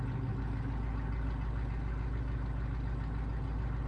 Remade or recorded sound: recorded